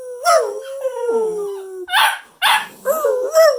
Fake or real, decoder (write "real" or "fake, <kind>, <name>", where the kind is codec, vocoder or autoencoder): real